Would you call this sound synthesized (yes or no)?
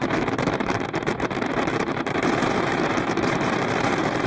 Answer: yes